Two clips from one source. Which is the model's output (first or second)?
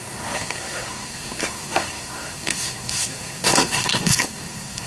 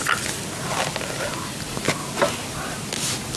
first